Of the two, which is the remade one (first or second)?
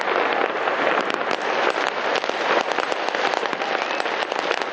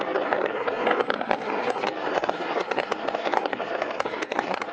second